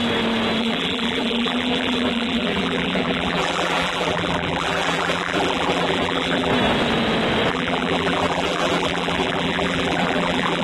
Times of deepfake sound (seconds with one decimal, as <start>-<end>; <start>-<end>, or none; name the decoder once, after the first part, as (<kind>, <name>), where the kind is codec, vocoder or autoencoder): 0.6-6.5 (vocoder, BigVGAN v2); 7.5-10.6